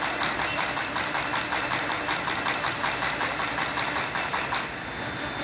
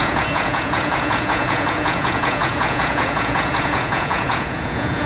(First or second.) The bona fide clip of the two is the first